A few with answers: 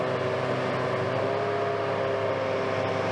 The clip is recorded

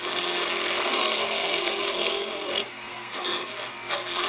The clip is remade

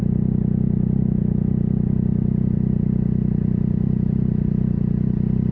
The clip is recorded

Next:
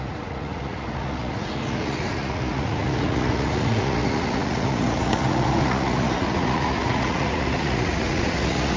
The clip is remade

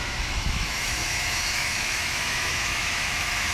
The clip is remade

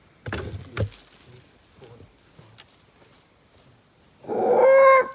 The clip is recorded